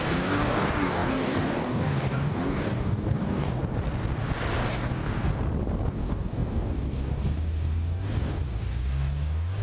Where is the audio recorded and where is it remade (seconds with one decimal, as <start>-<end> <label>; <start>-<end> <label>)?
0.0-3.6 remade; 3.6-4.7 recorded; 4.7-5.3 remade; 5.3-5.9 recorded; 5.9-9.6 remade